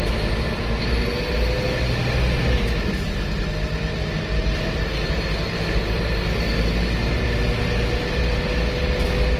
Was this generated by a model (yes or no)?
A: no